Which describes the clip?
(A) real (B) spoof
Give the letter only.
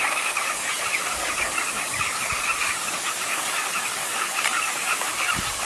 B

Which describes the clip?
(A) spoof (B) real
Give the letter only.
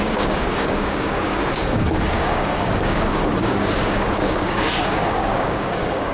A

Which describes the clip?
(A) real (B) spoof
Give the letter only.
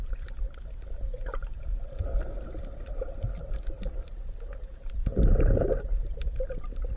A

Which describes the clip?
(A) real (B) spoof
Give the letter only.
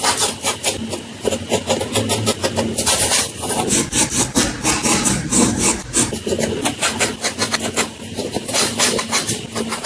A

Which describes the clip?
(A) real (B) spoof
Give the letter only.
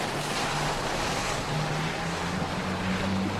A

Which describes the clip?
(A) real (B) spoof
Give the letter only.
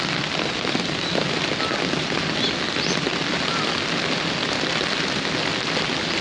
A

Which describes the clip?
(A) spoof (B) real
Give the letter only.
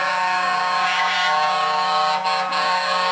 A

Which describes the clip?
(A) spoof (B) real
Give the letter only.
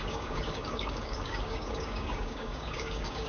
A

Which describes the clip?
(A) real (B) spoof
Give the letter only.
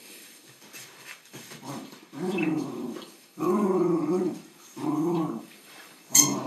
B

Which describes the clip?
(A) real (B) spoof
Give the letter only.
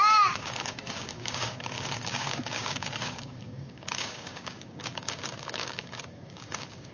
B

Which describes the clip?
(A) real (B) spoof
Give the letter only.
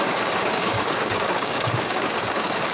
B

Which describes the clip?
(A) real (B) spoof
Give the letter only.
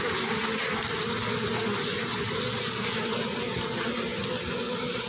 A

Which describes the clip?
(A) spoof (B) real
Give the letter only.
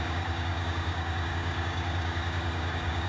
A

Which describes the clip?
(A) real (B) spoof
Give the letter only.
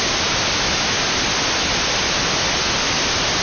A